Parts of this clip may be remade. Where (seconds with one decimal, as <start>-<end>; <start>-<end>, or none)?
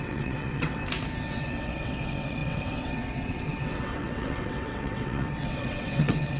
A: 0.0-0.8; 1.3-6.4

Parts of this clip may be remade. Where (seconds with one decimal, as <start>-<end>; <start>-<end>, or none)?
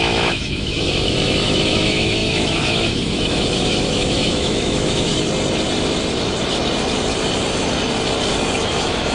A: 0.0-5.1; 8.6-9.1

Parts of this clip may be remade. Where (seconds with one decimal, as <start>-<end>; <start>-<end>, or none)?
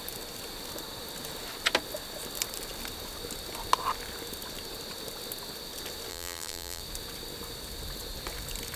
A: 6.1-6.8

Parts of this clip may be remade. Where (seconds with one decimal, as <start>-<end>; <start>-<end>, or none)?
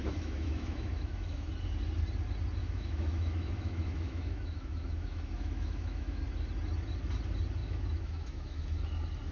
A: 0.0-1.5; 2.6-6.2; 7.6-8.8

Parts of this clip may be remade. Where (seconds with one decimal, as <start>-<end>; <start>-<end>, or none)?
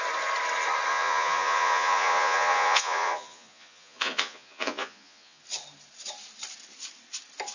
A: 0.9-5.4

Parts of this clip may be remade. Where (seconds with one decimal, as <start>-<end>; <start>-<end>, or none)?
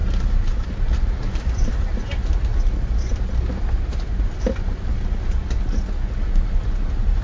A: 0.0-2.5; 6.8-7.2